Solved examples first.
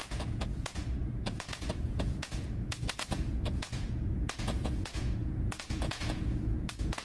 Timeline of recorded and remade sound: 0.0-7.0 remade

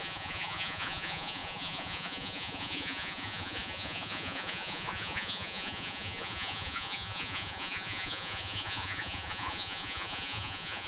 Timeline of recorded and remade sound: 0.0-10.9 remade

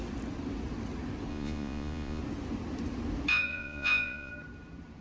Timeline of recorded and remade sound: 0.0-1.3 recorded; 1.3-2.2 remade; 2.2-3.3 recorded; 3.3-4.3 remade; 4.3-5.0 recorded

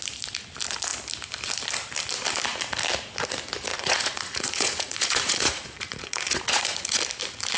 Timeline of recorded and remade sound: 0.0-3.7 recorded; 3.7-7.0 remade; 7.0-7.6 recorded